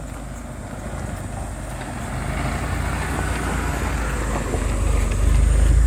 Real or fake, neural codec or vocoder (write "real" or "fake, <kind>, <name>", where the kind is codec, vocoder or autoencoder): real